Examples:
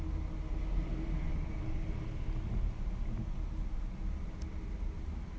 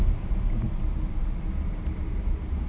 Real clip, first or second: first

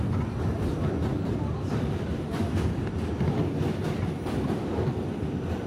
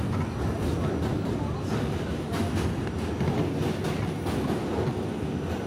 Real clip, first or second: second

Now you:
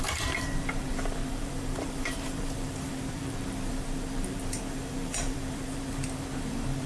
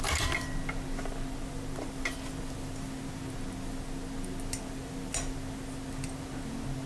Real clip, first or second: second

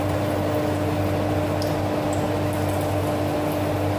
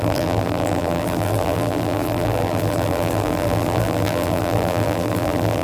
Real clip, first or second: first